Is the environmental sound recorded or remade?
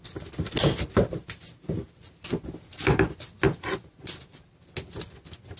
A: recorded